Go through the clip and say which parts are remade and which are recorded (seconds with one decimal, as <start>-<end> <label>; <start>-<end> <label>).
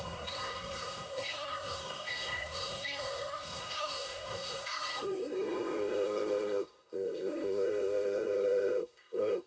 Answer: 0.0-9.5 remade